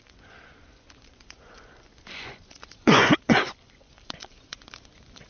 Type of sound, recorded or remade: remade